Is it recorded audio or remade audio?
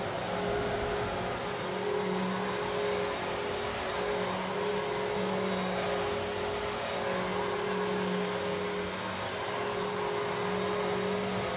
recorded